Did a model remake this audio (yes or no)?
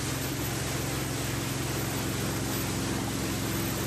no